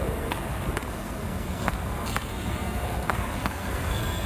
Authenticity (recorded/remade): remade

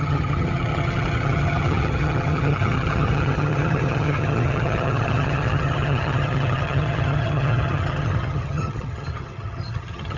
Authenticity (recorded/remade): remade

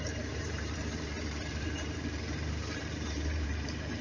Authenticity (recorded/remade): remade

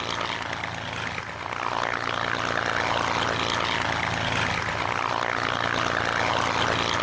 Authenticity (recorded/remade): recorded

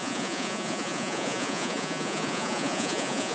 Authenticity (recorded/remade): remade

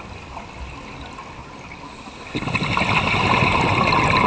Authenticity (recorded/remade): recorded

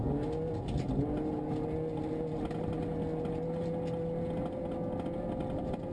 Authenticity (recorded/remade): recorded